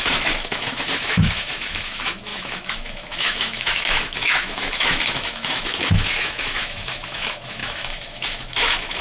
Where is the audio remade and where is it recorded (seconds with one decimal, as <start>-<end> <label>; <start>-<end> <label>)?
0.0-9.0 remade